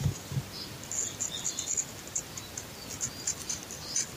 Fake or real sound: real